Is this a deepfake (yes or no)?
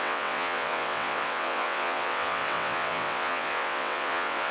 yes